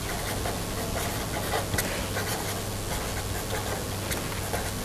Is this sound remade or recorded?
recorded